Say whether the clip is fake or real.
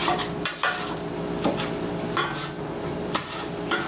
real